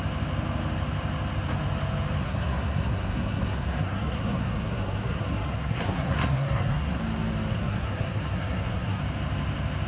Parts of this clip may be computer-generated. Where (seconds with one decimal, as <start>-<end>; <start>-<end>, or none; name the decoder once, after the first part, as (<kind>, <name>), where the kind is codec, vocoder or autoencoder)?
2.2-7.0 (codec, SNAC); 7.5-9.0